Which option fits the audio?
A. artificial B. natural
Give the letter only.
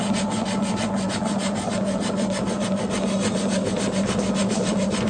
B